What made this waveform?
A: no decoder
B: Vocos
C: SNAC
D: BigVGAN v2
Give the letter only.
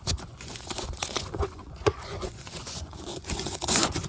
B